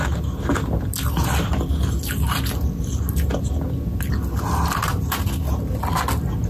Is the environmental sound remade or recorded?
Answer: recorded